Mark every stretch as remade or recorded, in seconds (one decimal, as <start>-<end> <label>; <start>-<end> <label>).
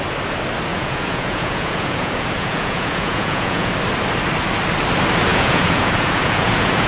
0.0-0.7 recorded; 0.7-3.7 remade; 3.7-5.3 recorded; 5.3-6.9 remade